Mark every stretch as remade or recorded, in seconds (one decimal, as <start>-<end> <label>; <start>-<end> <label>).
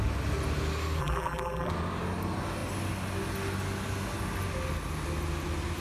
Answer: 0.0-1.0 recorded; 1.0-1.7 remade; 1.7-5.8 recorded